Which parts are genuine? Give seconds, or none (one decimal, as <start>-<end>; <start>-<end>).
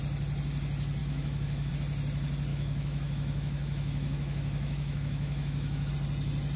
0.0-1.0; 1.7-2.5; 5.9-6.6